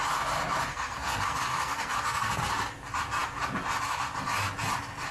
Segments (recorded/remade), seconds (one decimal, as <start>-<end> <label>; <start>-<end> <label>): 0.0-0.7 recorded; 0.7-2.4 remade; 2.4-5.1 recorded